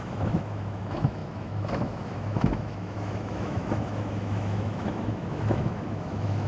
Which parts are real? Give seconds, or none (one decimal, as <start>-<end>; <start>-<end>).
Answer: none